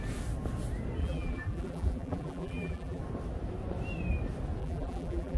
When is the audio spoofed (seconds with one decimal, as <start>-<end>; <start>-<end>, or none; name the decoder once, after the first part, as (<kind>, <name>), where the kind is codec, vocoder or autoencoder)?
1.0-3.0 (vocoder, BigVGAN v2); 4.6-5.4

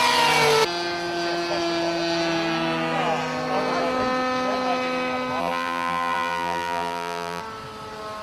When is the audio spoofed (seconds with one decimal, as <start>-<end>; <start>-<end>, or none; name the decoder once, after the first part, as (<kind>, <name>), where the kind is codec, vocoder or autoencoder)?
5.4-7.4 (vocoder, BigVGAN v2)

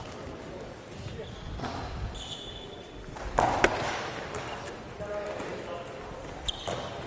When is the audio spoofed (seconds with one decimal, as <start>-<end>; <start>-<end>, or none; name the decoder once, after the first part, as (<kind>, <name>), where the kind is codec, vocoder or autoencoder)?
none

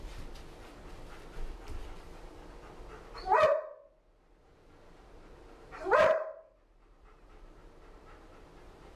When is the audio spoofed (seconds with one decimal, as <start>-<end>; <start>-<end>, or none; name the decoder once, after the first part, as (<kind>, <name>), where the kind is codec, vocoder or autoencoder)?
4.4-8.5 (vocoder, BigVGAN v2)

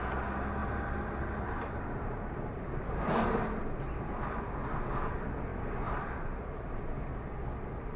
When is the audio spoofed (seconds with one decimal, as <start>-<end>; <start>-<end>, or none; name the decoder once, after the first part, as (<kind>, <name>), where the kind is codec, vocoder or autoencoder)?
0.6-3.6 (vocoder, BigVGAN v2); 5.5-6.7

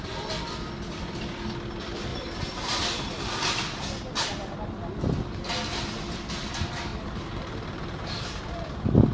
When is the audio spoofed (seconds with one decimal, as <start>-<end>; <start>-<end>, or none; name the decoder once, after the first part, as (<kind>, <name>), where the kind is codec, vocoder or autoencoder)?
2.1-3.3 (vocoder, BigVGAN v2); 6.9-8.4

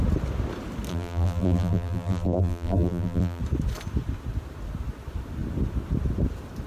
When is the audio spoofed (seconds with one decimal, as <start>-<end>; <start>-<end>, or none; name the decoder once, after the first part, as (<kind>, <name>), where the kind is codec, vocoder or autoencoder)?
0.9-3.4 (vocoder, BigVGAN v2)

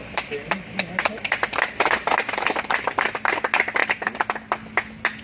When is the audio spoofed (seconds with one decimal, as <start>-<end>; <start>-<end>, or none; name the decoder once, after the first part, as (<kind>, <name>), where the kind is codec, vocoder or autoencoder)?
0.0-3.0 (vocoder, BigVGAN v2); 3.8-4.5